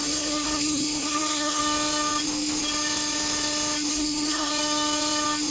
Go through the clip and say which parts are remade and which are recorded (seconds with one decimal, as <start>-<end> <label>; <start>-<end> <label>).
0.0-1.6 remade; 1.6-3.9 recorded; 3.9-4.5 remade; 4.5-5.5 recorded